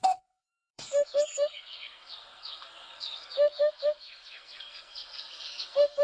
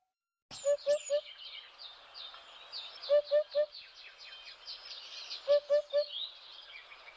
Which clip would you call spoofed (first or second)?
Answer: first